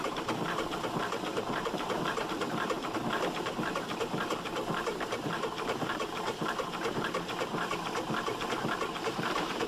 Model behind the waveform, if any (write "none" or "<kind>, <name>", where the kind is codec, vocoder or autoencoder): vocoder, BigVGAN v2